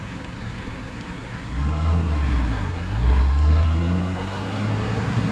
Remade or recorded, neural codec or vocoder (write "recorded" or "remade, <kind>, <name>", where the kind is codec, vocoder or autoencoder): remade, codec, SNAC